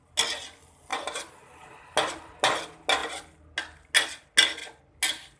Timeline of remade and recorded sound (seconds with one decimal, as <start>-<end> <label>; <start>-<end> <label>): 0.0-5.4 recorded